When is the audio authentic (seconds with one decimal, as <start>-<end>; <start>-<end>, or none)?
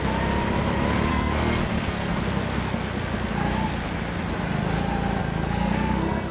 0.0-1.1; 2.2-5.2